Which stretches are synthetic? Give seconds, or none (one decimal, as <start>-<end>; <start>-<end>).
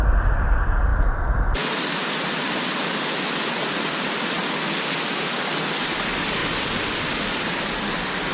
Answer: none